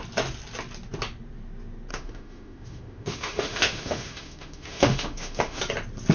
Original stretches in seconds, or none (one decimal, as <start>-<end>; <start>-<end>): 0.0-1.9; 5.6-6.1